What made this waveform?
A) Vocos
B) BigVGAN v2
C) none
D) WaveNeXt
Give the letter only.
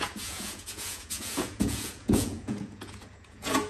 A